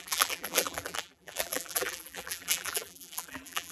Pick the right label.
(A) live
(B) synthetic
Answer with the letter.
B